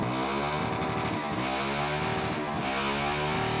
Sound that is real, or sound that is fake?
real